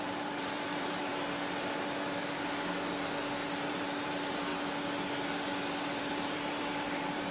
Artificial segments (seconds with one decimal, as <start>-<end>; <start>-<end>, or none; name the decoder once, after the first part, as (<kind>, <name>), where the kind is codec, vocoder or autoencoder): 0.0-1.1 (vocoder, BigVGAN v2); 3.7-4.5; 6.0-7.3